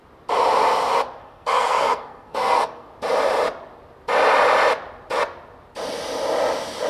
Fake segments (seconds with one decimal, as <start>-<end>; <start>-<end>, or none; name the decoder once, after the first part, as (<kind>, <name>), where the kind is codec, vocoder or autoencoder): 1.2-2.9 (codec, SNAC)